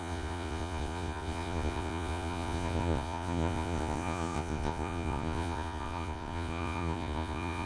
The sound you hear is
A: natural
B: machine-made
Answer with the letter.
B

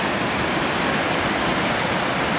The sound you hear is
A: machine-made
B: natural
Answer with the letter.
A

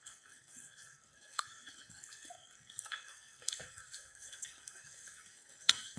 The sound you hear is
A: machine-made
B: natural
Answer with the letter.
A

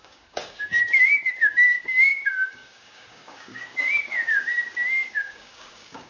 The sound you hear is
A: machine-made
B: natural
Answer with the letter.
A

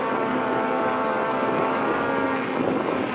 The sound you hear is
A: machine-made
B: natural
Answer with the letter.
A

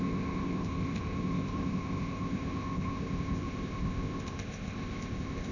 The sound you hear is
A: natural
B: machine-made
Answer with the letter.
B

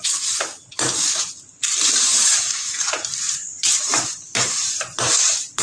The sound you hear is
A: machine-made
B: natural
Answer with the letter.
A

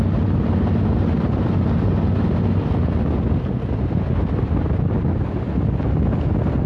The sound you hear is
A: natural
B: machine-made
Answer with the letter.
A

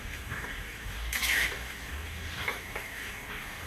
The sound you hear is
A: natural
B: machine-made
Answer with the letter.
B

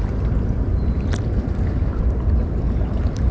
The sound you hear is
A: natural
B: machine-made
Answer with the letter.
B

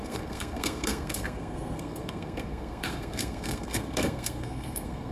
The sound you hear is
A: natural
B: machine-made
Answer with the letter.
B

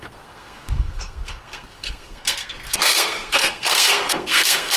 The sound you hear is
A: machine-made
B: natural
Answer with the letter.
A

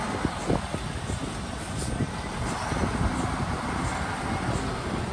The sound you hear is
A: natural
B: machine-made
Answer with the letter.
A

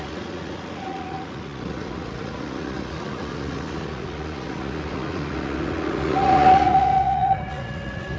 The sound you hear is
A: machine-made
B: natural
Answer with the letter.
A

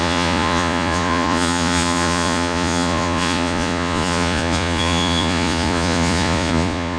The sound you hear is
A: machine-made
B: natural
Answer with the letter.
A